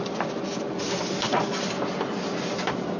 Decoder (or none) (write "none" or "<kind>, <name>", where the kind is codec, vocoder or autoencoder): none